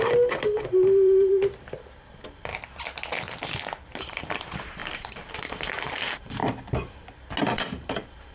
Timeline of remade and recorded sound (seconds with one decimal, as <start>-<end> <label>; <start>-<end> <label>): 0.0-1.3 remade; 1.3-2.1 recorded; 2.1-2.5 remade; 2.5-4.0 recorded; 4.0-6.4 remade; 6.4-7.4 recorded; 7.4-8.3 remade